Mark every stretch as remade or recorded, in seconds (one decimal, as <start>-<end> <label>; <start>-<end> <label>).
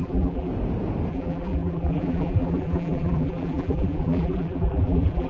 0.0-0.5 remade; 0.5-1.1 recorded; 1.1-5.3 remade